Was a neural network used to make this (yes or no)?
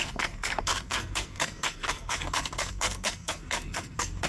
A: yes